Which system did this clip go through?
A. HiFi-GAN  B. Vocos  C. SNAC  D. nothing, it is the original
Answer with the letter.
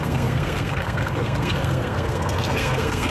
C